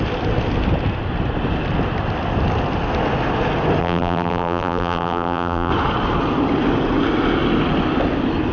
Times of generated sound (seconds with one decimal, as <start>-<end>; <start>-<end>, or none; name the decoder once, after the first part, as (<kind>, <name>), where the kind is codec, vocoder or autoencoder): 3.8-5.7 (vocoder, BigVGAN v2)